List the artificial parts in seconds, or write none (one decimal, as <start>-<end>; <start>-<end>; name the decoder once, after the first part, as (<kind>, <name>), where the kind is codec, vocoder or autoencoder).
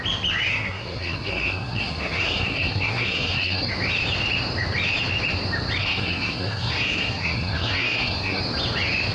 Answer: 0.5-3.7 (codec, SNAC); 5.8-8.4